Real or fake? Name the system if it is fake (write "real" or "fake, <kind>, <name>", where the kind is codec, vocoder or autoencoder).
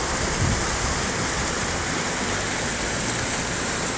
real